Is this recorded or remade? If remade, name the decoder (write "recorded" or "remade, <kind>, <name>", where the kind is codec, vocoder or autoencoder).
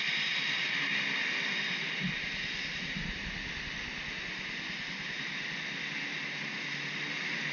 recorded